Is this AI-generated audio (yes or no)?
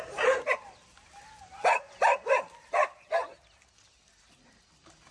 no